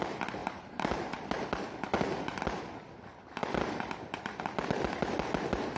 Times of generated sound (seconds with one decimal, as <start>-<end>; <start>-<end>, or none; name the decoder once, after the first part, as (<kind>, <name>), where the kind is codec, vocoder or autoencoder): 0.4-0.9 (vocoder, BigVGAN v2); 3.4-4.4